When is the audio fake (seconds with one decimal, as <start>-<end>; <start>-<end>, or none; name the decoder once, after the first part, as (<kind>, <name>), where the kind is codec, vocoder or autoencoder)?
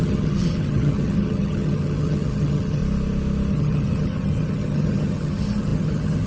0.0-2.8 (vocoder, HiFi-GAN); 3.5-6.3